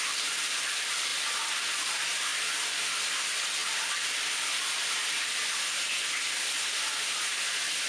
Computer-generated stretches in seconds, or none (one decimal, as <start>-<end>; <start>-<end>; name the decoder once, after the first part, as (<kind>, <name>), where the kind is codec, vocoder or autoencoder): 0.0-1.1 (vocoder, BigVGAN v2); 1.7-2.3; 3.1-7.9